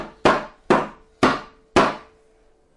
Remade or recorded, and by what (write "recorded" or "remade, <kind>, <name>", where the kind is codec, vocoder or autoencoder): recorded